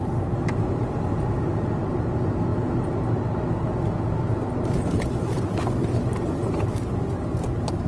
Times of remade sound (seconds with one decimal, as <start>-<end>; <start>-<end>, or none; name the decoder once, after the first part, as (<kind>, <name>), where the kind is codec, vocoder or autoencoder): none